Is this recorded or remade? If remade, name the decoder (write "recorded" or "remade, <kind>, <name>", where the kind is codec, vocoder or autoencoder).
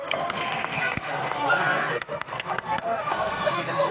remade, codec, SNAC